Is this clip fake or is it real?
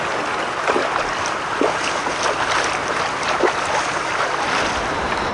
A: real